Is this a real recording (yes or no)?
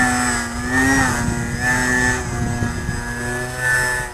yes